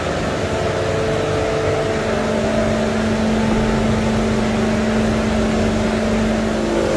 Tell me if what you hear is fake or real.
real